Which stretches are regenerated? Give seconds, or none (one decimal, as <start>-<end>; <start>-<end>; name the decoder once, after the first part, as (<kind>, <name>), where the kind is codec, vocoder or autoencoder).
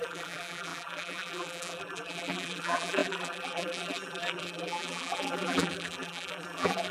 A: 0.0-6.9 (vocoder, BigVGAN v2)